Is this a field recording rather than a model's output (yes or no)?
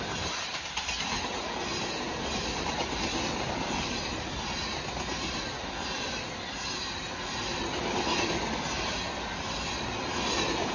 yes